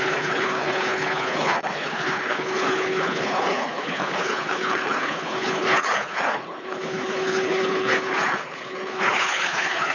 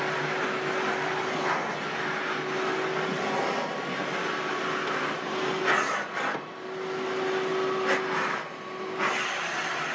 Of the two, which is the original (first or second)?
second